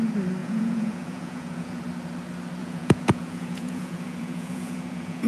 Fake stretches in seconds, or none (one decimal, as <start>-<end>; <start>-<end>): 0.4-1.8; 2.6-5.3